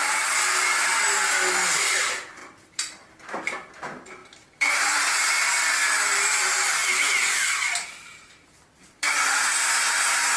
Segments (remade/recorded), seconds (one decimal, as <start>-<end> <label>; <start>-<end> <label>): 0.0-0.9 remade; 0.9-1.6 recorded; 1.6-10.4 remade